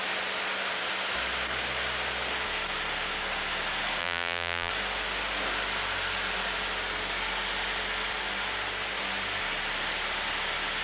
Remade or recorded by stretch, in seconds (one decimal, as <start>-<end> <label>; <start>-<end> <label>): 0.0-4.0 recorded; 4.0-4.7 remade; 4.7-10.8 recorded